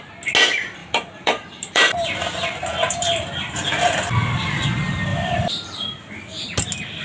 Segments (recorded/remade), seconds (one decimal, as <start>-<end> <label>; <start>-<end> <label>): 0.0-0.8 recorded; 0.8-4.0 remade; 4.0-5.1 recorded; 5.1-6.1 remade; 6.1-7.0 recorded